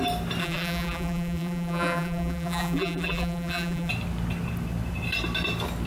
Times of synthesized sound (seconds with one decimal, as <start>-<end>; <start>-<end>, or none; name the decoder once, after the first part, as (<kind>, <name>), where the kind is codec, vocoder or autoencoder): 0.4-3.9 (vocoder, BigVGAN v2)